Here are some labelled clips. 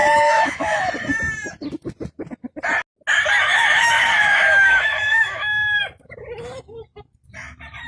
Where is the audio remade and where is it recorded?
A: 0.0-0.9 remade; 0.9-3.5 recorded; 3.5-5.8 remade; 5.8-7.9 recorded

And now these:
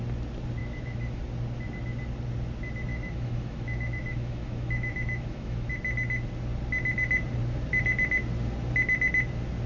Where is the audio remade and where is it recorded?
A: 0.0-0.6 recorded; 0.6-1.2 remade; 1.2-2.9 recorded; 2.9-5.7 remade; 5.7-9.7 recorded

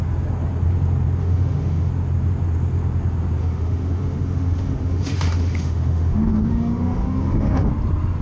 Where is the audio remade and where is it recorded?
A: 0.0-1.2 recorded; 1.2-1.9 remade; 1.9-3.4 recorded; 3.4-7.7 remade; 7.7-8.2 recorded